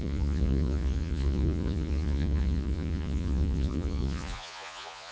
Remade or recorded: remade